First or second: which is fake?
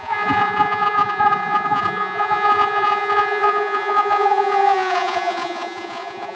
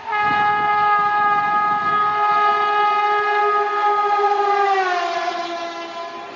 first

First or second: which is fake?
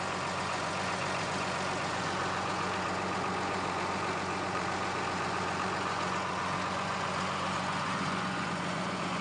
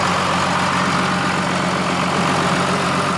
first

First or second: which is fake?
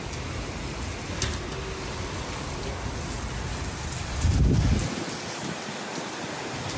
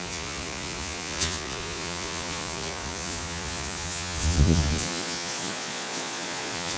second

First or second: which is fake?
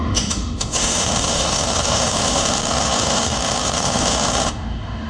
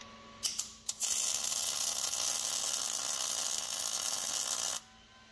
first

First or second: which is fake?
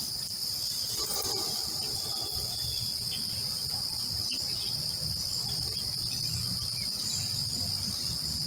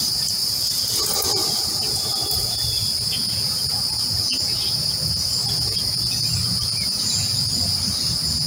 second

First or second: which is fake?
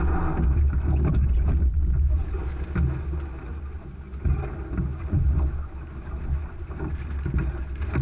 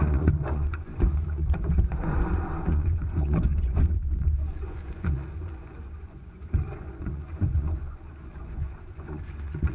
second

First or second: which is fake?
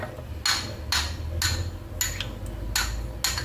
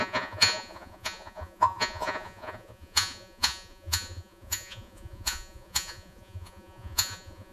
second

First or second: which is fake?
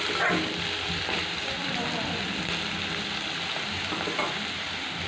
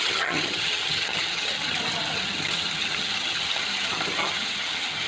second